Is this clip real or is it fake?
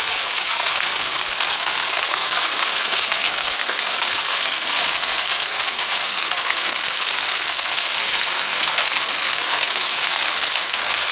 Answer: fake